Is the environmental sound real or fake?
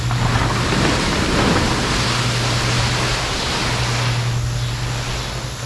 real